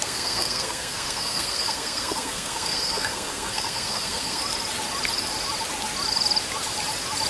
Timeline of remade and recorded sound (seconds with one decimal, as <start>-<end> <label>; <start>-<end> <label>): 0.0-4.4 remade; 4.4-7.3 recorded